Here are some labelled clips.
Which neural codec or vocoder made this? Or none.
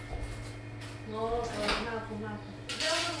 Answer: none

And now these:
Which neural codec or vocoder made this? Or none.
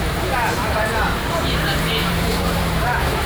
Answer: vocoder, BigVGAN v2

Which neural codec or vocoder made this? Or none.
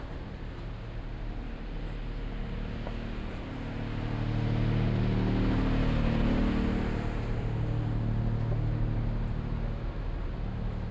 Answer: none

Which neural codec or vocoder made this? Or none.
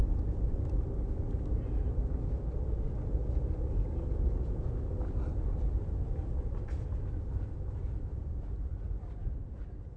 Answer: none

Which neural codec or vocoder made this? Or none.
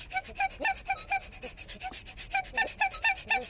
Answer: none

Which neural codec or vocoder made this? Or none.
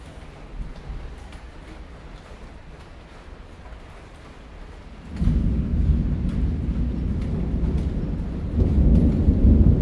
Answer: none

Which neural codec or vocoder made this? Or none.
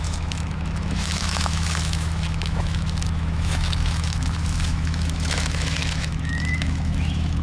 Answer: autoencoder, DAC-VAE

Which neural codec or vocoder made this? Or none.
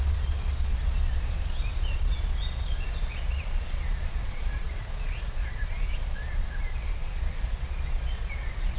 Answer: vocoder, Vocos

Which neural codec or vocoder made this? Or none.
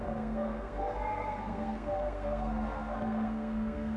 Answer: codec, SNAC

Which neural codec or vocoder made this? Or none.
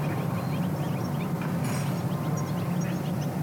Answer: none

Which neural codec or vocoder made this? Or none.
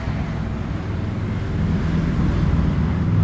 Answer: none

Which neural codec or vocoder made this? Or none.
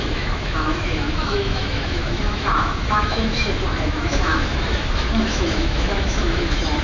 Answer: autoencoder, DAC-VAE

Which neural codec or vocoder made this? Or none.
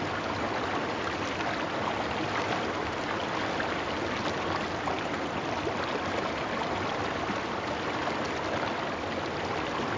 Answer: none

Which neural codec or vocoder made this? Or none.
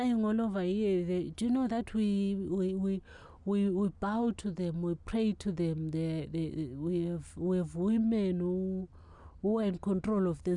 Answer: none